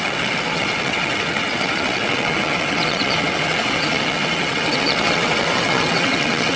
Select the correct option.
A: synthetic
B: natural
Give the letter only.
A